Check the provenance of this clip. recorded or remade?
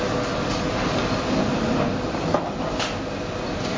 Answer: recorded